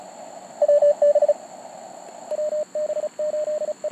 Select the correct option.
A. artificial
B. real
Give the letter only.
B